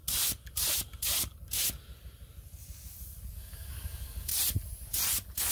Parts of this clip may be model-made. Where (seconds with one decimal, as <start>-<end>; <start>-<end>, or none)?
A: 3.3-4.3